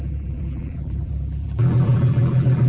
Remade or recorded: remade